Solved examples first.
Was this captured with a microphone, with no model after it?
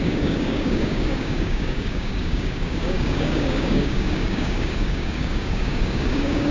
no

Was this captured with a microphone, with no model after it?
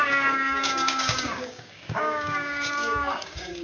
no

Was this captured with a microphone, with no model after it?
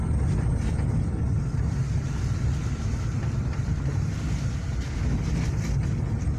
yes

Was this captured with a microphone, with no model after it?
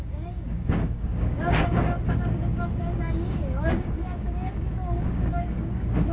no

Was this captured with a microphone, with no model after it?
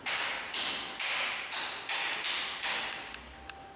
yes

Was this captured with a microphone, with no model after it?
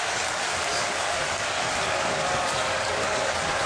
no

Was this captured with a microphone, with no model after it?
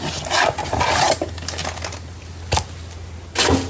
yes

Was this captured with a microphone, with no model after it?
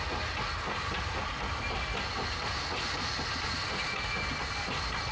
yes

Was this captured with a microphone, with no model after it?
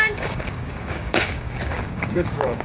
no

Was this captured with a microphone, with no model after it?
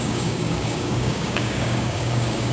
no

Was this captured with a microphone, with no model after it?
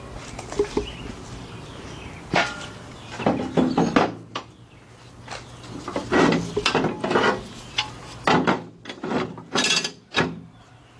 yes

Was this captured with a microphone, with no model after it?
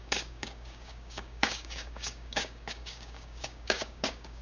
no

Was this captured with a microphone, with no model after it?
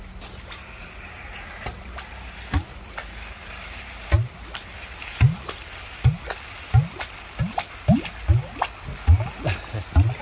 yes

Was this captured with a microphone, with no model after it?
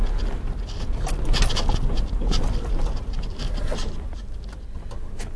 yes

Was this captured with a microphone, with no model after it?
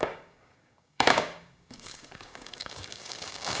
no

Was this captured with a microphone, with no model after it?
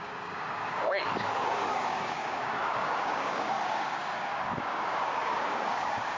no